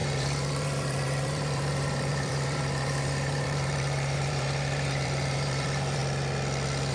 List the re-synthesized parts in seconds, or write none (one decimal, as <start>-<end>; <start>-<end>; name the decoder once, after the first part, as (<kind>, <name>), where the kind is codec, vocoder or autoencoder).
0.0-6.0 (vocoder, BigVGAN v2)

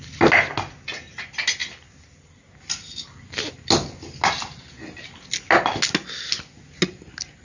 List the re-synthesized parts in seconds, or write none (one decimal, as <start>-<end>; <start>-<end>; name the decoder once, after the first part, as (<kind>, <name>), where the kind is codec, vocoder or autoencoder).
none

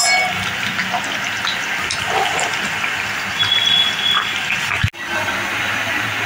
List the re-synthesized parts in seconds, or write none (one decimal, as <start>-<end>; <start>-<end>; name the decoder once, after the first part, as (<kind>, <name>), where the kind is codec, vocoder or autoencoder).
none

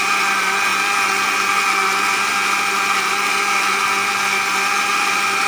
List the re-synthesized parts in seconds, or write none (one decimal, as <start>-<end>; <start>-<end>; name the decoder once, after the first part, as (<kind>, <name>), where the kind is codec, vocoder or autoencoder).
0.0-0.7 (vocoder, BigVGAN v2); 3.1-3.8; 4.5-5.5